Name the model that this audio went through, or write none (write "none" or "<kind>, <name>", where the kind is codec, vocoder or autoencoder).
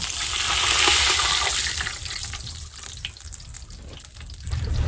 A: none